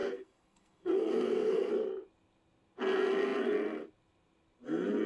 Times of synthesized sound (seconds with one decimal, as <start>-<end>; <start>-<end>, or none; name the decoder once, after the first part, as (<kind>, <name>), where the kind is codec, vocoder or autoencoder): 0.0-1.7 (codec, SNAC)